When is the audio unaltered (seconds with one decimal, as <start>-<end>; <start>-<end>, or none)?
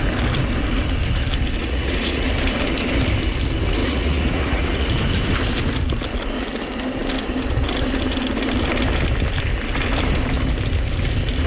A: 0.0-1.6; 2.3-3.8; 4.9-11.5